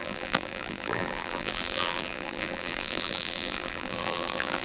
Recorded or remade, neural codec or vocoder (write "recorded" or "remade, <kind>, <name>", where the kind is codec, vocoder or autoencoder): remade, vocoder, BigVGAN v2